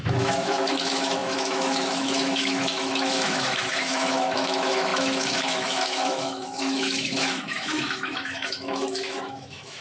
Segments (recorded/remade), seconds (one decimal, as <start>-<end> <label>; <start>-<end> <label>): 0.0-9.8 remade